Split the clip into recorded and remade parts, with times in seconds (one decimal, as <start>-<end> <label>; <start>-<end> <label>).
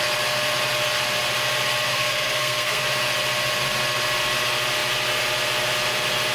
0.0-1.9 recorded; 1.9-2.8 remade; 2.8-6.3 recorded